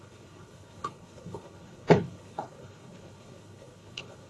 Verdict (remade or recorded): remade